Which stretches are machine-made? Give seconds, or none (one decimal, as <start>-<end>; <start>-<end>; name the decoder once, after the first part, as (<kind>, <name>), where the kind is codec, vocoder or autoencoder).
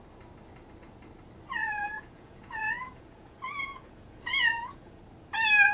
1.6-5.0 (vocoder, Vocos)